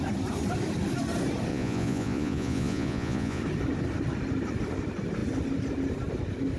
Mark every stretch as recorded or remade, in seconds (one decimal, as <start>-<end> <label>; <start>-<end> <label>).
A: 0.0-1.5 recorded; 1.5-3.4 remade; 3.4-6.6 recorded